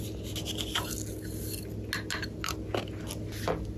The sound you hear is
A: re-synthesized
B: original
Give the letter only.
B